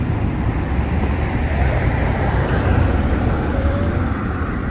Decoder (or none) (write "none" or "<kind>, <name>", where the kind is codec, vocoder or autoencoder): vocoder, BigVGAN v2